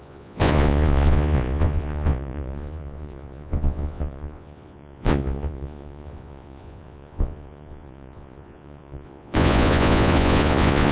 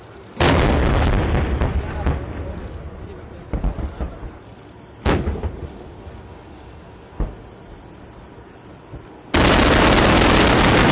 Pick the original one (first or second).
second